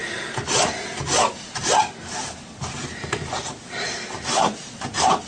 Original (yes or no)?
yes